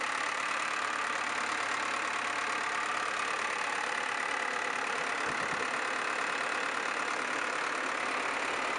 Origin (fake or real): real